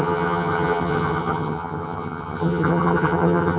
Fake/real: fake